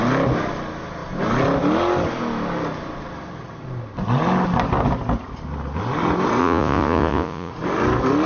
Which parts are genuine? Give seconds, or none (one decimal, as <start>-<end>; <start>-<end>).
0.0-6.4; 7.5-8.3